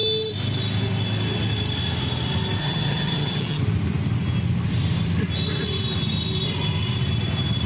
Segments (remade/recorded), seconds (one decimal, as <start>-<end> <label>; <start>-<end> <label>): 0.0-2.6 recorded; 2.6-3.6 remade; 3.6-7.7 recorded